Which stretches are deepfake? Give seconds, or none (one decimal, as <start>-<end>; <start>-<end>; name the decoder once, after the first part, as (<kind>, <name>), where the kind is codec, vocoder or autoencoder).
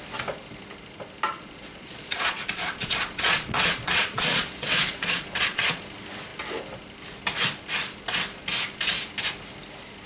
1.3-5.8 (vocoder, Vocos)